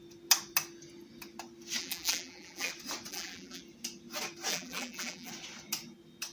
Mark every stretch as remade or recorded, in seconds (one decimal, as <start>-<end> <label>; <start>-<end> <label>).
0.0-1.8 recorded; 1.8-2.7 remade; 2.7-3.1 recorded; 3.1-3.6 remade; 3.6-4.5 recorded; 4.5-5.3 remade; 5.3-6.3 recorded